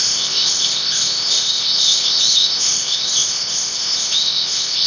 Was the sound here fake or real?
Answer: fake